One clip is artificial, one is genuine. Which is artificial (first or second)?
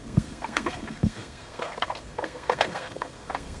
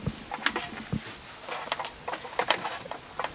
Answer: first